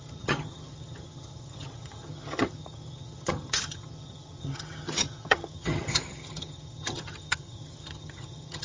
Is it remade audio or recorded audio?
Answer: remade